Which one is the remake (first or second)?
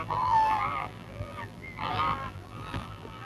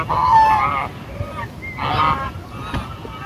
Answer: first